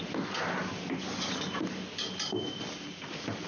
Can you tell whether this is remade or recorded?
recorded